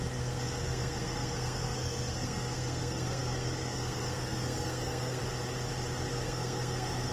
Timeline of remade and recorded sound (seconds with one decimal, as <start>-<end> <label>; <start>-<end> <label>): 0.0-5.2 remade; 5.2-6.1 recorded; 6.1-7.1 remade